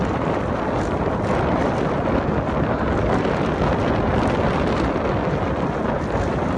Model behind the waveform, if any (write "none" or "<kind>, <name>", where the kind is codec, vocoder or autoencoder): none